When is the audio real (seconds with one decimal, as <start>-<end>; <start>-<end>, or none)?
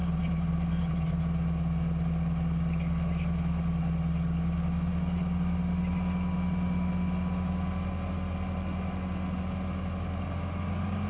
1.2-11.1